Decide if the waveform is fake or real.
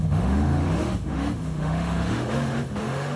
fake